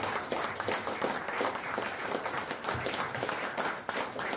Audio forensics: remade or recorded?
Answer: recorded